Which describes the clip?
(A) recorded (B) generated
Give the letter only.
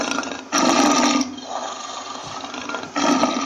A